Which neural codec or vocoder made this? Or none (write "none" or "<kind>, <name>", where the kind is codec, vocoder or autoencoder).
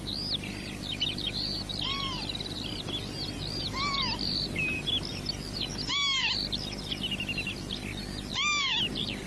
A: none